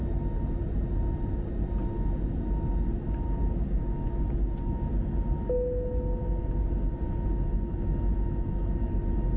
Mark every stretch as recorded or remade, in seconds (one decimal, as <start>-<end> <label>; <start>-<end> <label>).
0.0-9.4 recorded